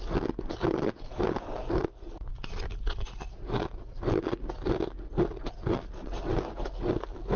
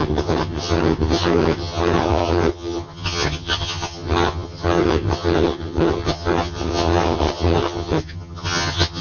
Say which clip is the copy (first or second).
second